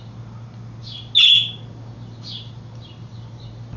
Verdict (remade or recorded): recorded